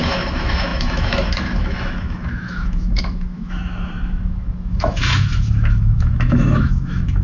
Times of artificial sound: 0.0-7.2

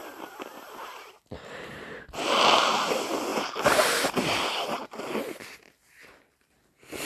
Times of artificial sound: 0.0-1.9

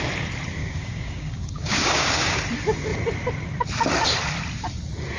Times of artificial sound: 0.6-2.4

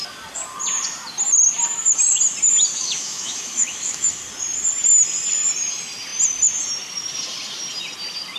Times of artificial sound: 2.7-4.1

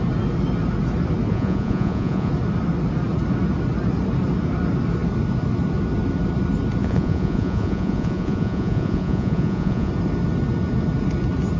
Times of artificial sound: 1.3-2.3; 6.8-9.9

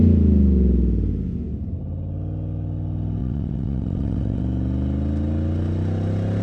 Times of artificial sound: 3.2-4.4